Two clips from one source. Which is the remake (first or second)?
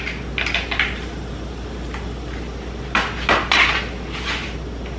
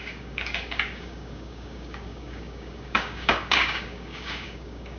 second